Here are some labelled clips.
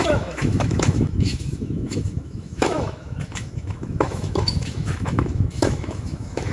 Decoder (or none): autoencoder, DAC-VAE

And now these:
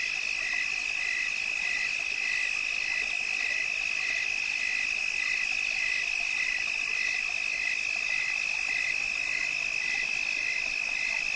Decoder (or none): none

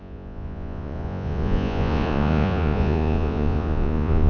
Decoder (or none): vocoder, Vocos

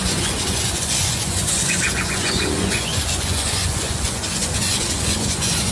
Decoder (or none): vocoder, Vocos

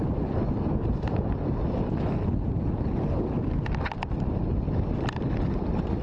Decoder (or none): none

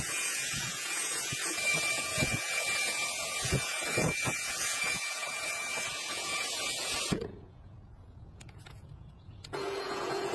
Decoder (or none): vocoder, Vocos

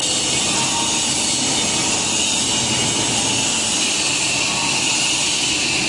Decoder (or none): none